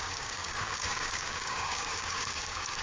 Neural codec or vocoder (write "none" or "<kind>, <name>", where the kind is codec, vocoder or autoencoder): codec, DAC